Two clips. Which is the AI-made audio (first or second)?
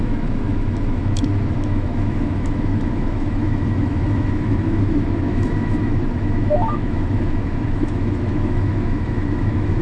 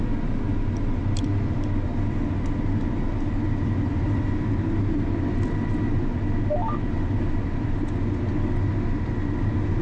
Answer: first